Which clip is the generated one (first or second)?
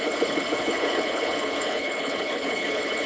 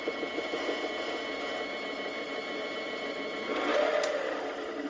first